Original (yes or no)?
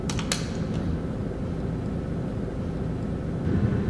yes